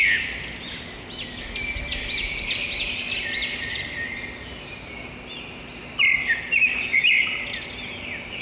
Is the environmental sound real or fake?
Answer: real